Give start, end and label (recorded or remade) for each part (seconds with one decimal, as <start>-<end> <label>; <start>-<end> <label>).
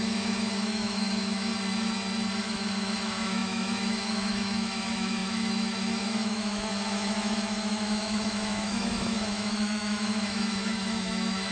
0.0-1.5 remade; 1.5-2.4 recorded; 2.4-11.5 remade